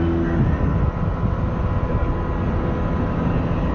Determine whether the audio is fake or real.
real